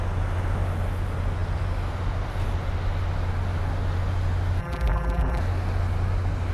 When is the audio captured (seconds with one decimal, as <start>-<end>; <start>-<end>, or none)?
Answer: 0.0-4.6; 5.4-6.5